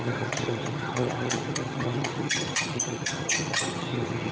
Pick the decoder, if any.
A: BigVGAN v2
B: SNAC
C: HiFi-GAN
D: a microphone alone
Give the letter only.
C